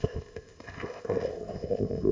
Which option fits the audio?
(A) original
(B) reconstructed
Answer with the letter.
B